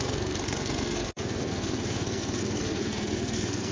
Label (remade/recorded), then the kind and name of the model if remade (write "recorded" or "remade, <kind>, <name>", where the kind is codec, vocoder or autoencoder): remade, codec, SNAC